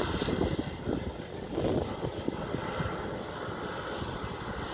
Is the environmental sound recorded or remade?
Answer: recorded